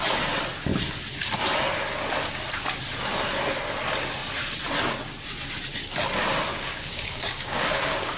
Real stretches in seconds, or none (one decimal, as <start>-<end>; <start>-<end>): 0.0-6.5

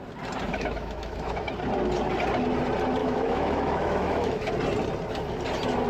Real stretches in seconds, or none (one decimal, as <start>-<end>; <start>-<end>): 0.0-0.5; 1.5-3.0; 4.5-5.9

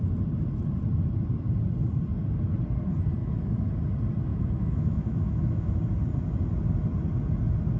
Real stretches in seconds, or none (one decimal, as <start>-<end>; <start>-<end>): 0.0-3.2; 3.7-4.3; 5.8-7.8

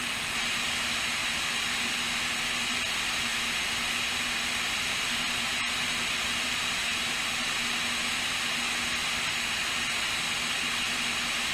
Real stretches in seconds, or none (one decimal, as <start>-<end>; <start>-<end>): 0.0-11.5

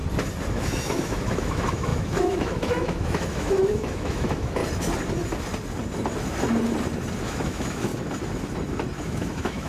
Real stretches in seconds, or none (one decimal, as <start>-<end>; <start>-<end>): 0.0-0.5; 4.6-7.2; 7.9-9.0